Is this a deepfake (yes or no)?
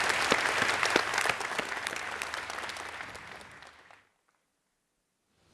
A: no